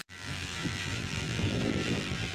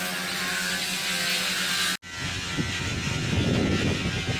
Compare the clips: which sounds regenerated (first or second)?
first